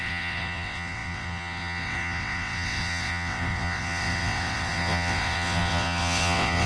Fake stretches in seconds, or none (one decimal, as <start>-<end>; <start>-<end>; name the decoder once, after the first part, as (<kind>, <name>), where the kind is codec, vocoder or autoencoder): 0.0-6.7 (vocoder, WaveNeXt)